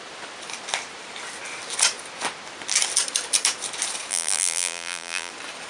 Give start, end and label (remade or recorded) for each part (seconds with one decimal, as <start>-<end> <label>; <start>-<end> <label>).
0.0-4.1 recorded; 4.1-5.3 remade; 5.3-5.7 recorded